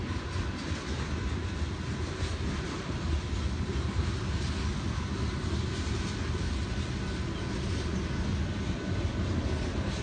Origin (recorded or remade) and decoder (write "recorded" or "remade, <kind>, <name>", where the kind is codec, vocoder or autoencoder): recorded